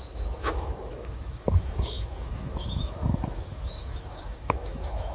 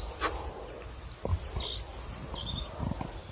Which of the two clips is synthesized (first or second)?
first